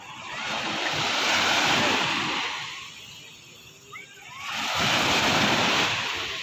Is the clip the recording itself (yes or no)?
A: yes